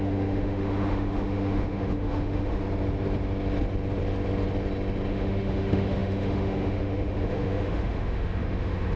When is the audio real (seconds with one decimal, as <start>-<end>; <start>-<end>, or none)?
2.6-5.1